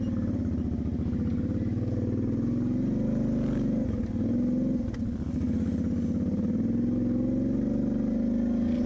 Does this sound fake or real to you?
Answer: real